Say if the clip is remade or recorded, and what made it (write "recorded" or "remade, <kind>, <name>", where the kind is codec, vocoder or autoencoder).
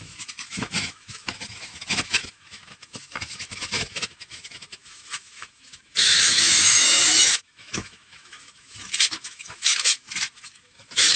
remade, autoencoder, DAC-VAE